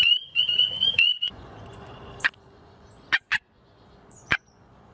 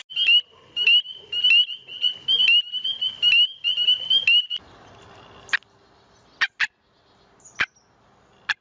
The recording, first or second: second